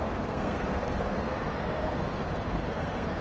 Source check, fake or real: fake